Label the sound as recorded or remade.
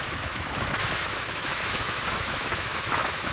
remade